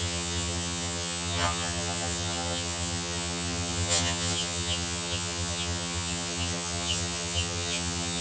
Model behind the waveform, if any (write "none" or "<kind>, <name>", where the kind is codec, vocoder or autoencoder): vocoder, HiFi-GAN